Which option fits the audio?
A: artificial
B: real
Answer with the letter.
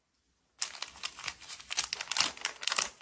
B